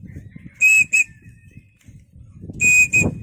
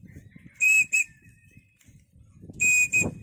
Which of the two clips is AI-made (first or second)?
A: second